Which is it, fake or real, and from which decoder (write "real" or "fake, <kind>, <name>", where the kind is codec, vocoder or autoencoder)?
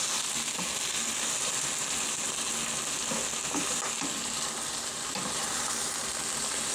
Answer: real